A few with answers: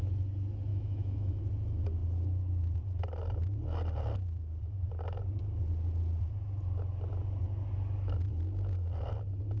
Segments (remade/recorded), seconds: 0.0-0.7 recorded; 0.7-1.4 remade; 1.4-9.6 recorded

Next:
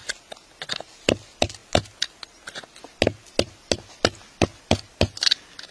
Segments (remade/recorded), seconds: 0.0-5.7 recorded

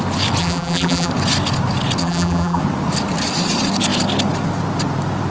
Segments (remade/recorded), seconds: 0.0-0.4 recorded; 0.4-1.1 remade; 1.1-2.0 recorded; 2.0-2.6 remade; 2.6-5.3 recorded